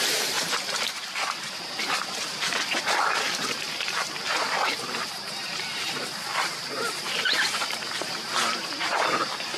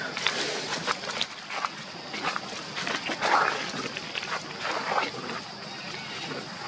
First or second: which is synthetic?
first